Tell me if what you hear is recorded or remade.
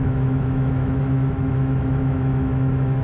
remade